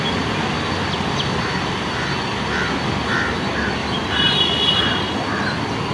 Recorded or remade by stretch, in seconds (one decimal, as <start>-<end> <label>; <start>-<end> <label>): 0.0-3.8 recorded; 3.8-4.6 remade; 4.6-5.9 recorded